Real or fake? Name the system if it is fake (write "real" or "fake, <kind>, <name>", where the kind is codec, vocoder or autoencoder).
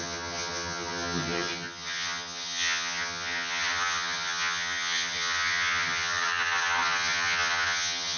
fake, vocoder, HiFi-GAN